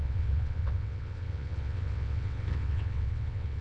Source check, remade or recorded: remade